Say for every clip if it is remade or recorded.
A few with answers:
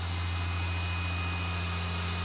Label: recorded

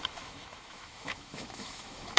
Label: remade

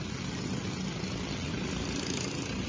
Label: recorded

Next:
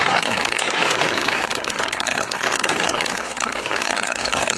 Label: remade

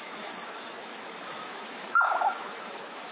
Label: remade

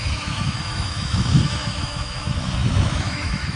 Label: remade